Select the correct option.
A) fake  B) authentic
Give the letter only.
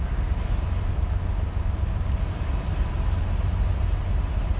B